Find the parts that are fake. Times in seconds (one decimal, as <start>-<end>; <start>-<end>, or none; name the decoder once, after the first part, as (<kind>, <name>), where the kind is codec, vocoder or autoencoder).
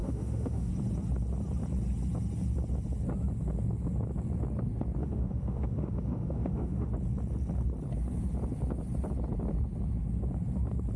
0.0-0.7 (autoencoder, DAC-VAE); 5.0-6.9